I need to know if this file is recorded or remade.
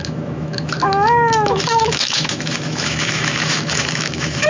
remade